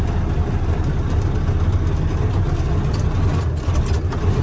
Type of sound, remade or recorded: recorded